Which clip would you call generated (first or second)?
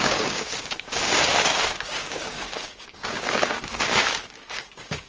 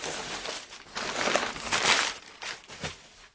first